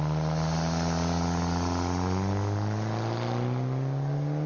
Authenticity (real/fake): real